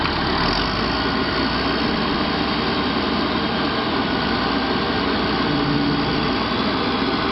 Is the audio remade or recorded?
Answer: recorded